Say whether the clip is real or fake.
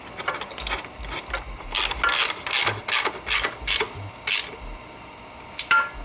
real